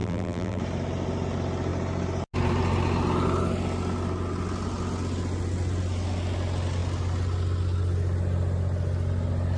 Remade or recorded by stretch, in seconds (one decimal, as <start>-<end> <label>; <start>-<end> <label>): 0.0-0.6 remade; 0.6-9.6 recorded